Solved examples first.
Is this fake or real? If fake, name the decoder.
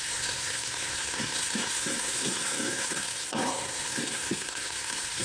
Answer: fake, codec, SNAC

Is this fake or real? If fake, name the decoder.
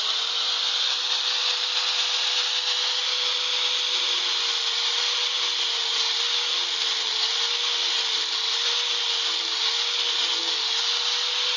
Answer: real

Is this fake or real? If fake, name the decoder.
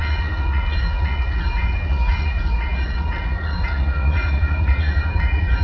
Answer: fake, vocoder, Vocos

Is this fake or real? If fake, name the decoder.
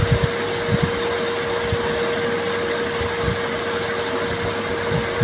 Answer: real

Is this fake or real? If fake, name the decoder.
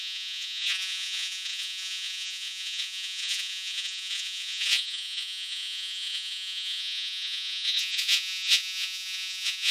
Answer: fake, vocoder, Vocos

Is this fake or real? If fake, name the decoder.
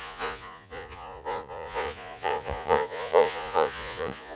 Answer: fake, vocoder, Vocos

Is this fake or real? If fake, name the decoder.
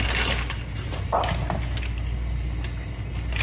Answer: real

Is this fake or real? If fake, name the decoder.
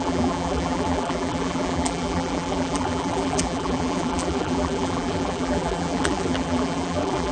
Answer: fake, vocoder, BigVGAN v2